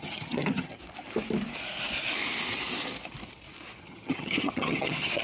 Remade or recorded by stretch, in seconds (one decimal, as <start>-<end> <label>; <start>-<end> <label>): 0.0-0.8 remade; 0.8-3.8 recorded; 3.8-5.2 remade